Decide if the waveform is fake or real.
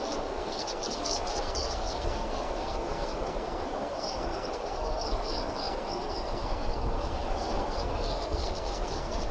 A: fake